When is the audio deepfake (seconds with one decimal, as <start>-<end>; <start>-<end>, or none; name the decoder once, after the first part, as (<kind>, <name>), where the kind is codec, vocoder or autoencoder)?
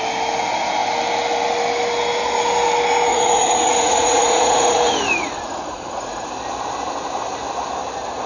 3.1-6.3 (vocoder, Vocos)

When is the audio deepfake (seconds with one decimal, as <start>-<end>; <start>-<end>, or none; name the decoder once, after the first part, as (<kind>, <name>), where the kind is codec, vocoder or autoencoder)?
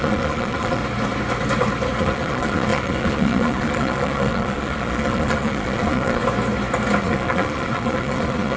0.0-0.8 (vocoder, Vocos); 2.0-6.2; 7.0-8.6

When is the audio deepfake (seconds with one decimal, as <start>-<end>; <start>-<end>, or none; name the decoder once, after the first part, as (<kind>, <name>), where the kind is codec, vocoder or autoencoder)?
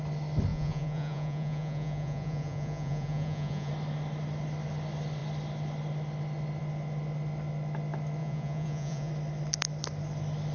0.5-3.7 (vocoder, Vocos); 8.2-9.1